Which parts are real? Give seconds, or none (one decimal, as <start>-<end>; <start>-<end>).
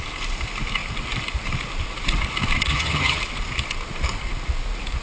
0.0-2.7; 3.2-5.0